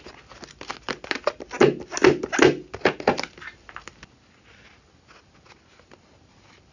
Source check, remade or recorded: recorded